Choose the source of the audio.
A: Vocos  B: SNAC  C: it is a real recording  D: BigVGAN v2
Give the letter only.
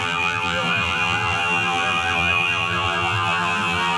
D